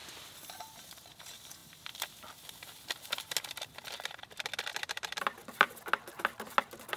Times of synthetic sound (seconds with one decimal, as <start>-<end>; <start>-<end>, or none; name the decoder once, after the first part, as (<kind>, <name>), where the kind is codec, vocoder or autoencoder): 0.0-0.8 (vocoder, BigVGAN v2); 4.7-5.7